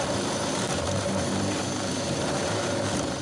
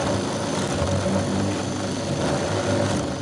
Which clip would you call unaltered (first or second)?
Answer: second